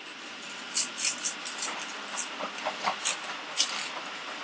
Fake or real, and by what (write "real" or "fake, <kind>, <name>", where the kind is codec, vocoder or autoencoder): real